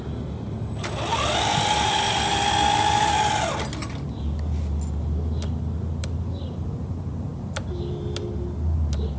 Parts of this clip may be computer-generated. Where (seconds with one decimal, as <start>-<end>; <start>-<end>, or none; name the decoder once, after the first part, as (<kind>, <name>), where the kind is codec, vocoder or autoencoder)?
none